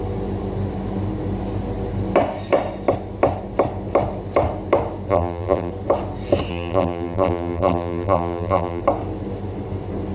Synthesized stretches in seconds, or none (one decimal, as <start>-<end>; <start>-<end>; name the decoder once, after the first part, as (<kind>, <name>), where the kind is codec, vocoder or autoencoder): 5.1-5.7 (vocoder, BigVGAN v2); 6.5-8.8